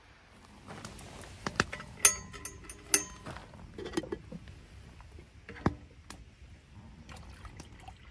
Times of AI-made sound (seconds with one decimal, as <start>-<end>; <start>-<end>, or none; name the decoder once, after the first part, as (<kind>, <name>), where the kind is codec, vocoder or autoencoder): none